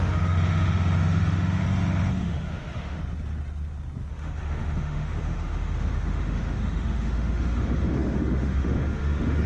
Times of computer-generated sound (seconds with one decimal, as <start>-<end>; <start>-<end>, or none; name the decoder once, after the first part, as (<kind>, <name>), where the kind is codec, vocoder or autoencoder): 0.0-1.6 (autoencoder, DAC-VAE); 2.1-3.0; 4.1-9.5